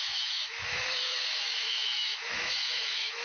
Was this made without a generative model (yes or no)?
no